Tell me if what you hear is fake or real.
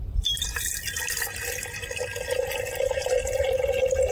real